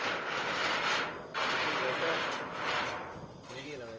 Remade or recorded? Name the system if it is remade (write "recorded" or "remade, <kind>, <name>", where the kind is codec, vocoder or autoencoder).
recorded